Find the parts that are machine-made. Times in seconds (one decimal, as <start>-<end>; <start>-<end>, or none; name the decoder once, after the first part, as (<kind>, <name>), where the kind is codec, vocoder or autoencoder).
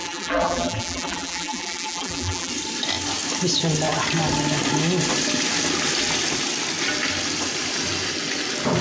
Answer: 0.0-2.5 (vocoder, BigVGAN v2)